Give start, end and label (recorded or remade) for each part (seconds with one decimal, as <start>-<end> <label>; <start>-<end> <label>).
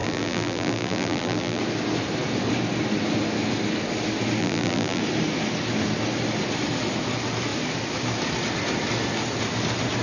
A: 0.0-1.6 remade; 1.6-4.4 recorded; 4.4-5.0 remade; 5.0-10.0 recorded